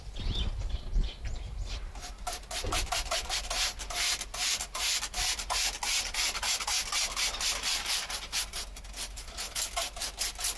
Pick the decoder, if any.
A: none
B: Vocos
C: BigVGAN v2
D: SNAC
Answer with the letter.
A